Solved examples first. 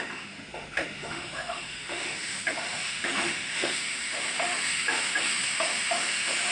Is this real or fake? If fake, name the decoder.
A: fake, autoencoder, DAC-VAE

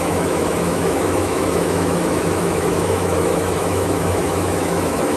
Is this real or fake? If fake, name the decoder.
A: fake, autoencoder, DAC-VAE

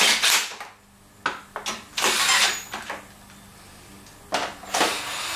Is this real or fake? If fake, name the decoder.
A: real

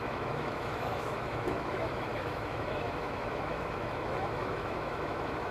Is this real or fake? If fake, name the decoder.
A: fake, autoencoder, DAC-VAE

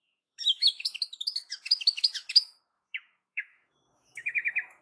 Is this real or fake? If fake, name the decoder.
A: fake, autoencoder, DAC-VAE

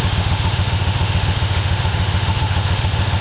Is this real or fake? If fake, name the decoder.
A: fake, autoencoder, DAC-VAE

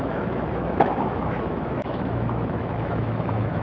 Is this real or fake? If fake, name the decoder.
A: fake, autoencoder, DAC-VAE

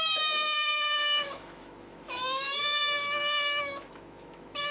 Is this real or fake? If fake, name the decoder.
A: fake, autoencoder, DAC-VAE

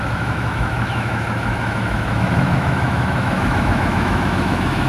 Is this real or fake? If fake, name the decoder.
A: fake, autoencoder, DAC-VAE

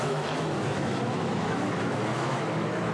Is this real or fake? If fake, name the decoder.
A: fake, autoencoder, DAC-VAE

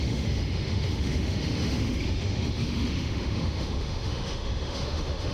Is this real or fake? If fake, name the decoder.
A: fake, autoencoder, DAC-VAE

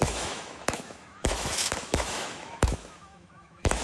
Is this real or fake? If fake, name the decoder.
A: fake, autoencoder, DAC-VAE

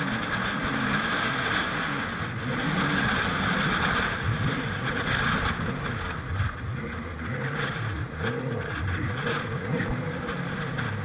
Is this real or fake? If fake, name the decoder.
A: real